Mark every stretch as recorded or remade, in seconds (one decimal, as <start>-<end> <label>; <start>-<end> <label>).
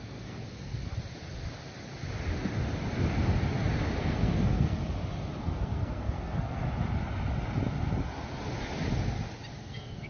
0.0-0.9 remade; 0.9-4.0 recorded; 4.0-4.8 remade; 4.8-5.4 recorded; 5.4-6.6 remade; 6.6-9.6 recorded; 9.6-10.1 remade